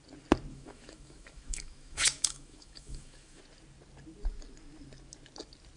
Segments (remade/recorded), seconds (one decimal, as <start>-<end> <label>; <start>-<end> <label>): 0.0-0.5 recorded; 0.5-3.4 remade; 3.4-5.8 recorded